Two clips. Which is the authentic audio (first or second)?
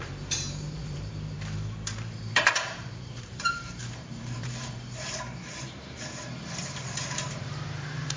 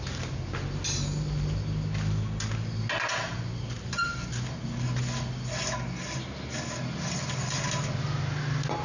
second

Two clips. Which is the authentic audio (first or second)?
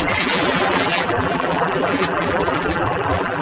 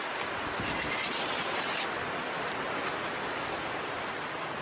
second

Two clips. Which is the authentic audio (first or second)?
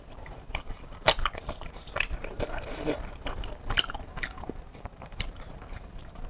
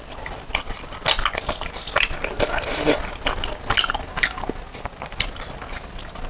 second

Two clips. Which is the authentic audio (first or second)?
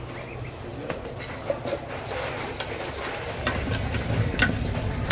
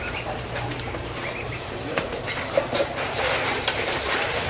first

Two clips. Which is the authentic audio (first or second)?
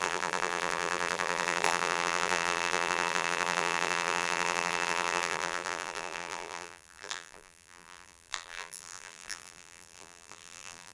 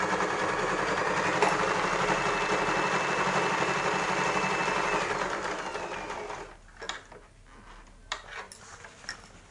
second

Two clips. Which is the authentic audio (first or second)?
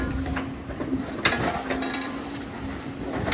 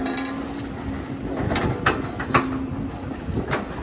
second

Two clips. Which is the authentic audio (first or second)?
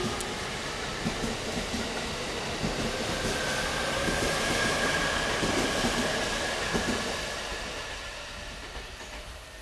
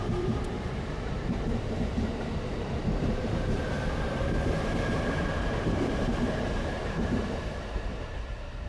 first